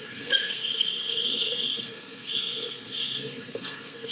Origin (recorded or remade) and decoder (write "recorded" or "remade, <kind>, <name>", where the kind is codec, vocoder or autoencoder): remade, codec, SNAC